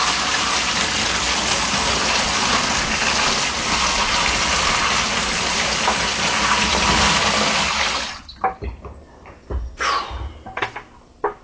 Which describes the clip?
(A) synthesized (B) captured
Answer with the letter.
B